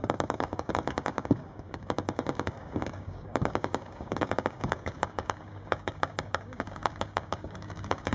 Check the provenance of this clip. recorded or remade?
remade